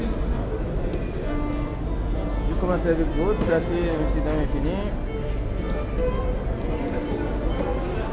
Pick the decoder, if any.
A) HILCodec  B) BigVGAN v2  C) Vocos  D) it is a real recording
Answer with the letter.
D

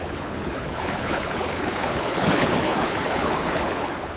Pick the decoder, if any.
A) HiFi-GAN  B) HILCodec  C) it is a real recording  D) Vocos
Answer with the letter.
B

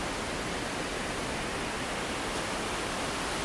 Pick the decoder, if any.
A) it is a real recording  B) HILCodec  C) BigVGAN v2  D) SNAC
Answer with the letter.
A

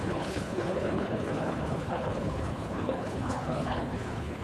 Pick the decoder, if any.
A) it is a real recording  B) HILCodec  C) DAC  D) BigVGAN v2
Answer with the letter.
B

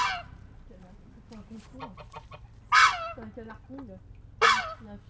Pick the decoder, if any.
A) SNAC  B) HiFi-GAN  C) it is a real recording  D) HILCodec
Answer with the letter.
C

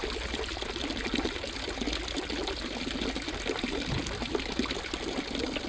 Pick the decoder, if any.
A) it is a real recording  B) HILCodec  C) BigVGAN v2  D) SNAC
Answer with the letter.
A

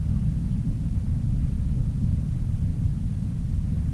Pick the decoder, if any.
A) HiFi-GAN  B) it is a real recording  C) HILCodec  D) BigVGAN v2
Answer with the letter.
B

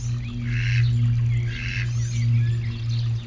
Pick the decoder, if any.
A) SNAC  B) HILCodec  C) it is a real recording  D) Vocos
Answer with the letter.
C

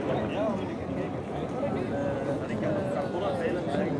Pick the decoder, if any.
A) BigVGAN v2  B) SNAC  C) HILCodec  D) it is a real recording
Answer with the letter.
D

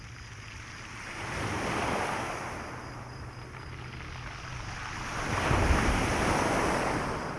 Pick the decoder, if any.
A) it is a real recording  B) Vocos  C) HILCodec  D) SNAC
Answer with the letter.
A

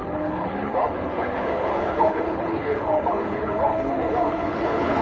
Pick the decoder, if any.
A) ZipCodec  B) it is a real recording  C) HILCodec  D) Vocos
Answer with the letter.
C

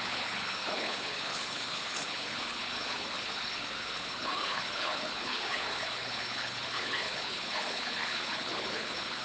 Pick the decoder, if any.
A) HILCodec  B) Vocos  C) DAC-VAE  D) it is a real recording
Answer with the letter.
A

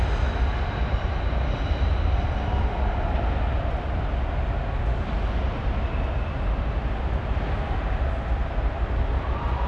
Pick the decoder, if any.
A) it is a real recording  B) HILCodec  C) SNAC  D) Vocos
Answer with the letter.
A